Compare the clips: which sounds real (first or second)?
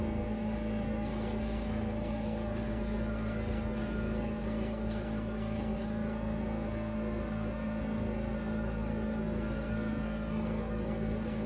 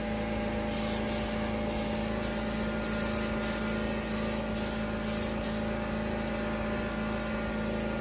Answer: second